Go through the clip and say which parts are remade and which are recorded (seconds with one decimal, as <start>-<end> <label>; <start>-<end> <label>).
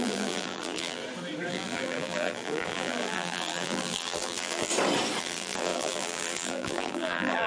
0.0-1.0 remade; 1.0-1.5 recorded; 1.5-4.7 remade; 4.7-5.2 recorded; 5.2-7.5 remade